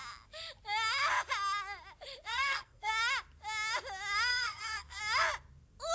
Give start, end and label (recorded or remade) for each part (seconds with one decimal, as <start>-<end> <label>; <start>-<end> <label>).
0.0-2.3 recorded; 2.3-2.9 remade; 2.9-4.3 recorded; 4.3-5.0 remade; 5.0-5.9 recorded